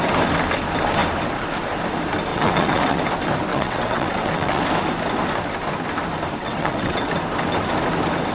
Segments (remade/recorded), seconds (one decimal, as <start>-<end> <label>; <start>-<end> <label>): 0.0-2.3 recorded; 2.3-3.0 remade; 3.0-3.5 recorded; 3.5-4.6 remade; 4.6-6.4 recorded; 6.4-7.1 remade; 7.1-8.3 recorded